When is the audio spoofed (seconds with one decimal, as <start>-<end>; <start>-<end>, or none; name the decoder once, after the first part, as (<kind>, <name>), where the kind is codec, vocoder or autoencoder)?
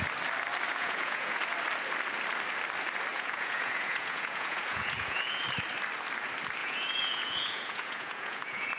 0.7-1.4 (vocoder, Vocos); 3.1-5.4; 6.6-8.8